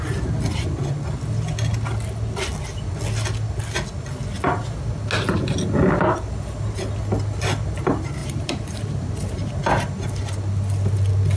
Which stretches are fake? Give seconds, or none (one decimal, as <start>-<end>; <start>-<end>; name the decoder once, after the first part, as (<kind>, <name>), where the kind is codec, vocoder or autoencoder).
8.2-9.5 (vocoder, BigVGAN v2)